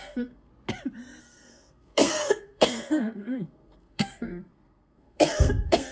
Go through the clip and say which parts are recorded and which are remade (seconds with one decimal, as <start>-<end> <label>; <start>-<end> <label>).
0.0-0.5 remade; 0.5-1.2 recorded; 1.2-5.9 remade